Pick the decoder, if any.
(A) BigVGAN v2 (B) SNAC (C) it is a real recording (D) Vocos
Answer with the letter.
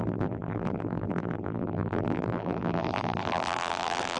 A